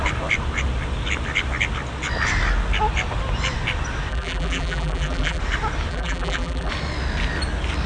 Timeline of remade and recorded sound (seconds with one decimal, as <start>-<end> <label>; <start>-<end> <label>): 0.0-4.1 recorded; 4.1-5.4 remade; 5.4-5.9 recorded; 5.9-6.7 remade; 6.7-7.9 recorded